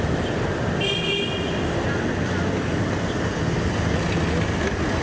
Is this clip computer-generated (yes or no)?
no